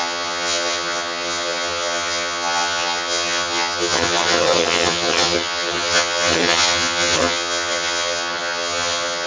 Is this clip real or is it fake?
fake